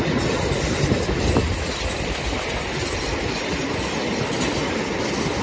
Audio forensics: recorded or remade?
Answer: recorded